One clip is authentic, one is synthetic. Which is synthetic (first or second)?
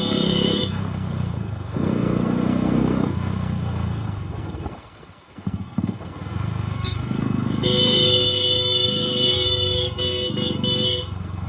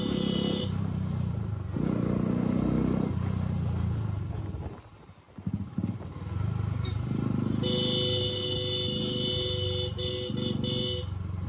first